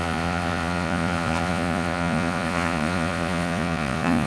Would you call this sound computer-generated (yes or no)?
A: yes